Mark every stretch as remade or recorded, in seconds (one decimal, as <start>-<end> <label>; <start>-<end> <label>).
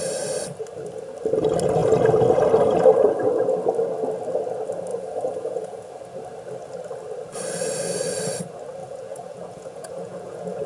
0.0-4.9 recorded; 4.9-5.9 remade; 5.9-8.8 recorded; 8.8-10.7 remade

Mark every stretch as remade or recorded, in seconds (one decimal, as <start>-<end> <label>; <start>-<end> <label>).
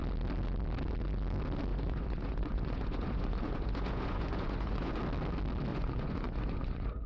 0.0-1.7 recorded; 1.7-5.0 remade; 5.0-5.7 recorded; 5.7-7.1 remade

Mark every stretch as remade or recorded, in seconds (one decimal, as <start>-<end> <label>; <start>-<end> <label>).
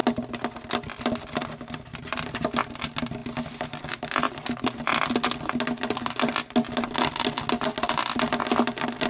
0.0-9.1 recorded